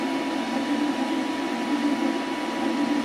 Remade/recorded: recorded